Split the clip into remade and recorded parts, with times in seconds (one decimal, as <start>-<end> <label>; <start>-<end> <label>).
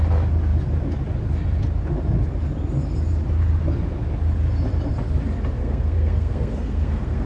0.0-5.6 recorded; 5.6-7.3 remade